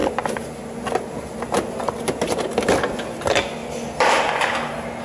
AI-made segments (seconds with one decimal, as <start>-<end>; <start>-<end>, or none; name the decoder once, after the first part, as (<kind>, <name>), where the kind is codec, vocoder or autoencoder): 0.0-3.0 (vocoder, BigVGAN v2)